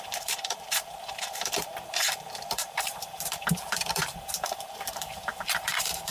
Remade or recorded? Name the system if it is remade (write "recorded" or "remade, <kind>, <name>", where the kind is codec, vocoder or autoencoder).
remade, vocoder, BigVGAN v2